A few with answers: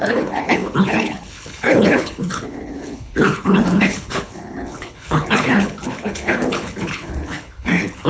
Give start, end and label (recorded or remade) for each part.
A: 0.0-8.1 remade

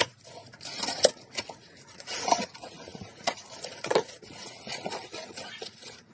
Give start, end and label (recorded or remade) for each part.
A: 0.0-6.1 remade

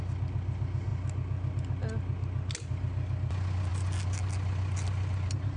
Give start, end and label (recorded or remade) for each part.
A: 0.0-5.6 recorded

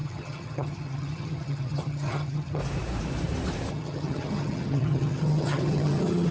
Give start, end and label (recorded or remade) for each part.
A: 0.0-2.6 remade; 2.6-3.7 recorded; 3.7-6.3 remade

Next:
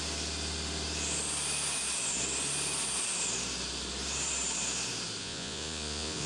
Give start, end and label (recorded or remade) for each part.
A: 0.0-5.2 recorded; 5.2-6.3 remade